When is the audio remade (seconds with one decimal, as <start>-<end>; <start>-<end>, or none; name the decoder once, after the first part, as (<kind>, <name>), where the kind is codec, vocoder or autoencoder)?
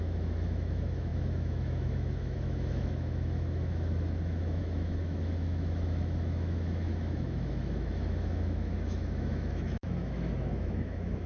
0.0-11.3 (autoencoder, DAC-VAE)